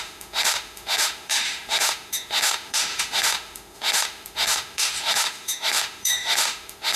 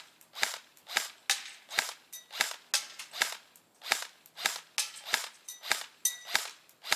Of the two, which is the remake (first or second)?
first